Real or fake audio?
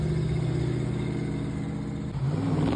real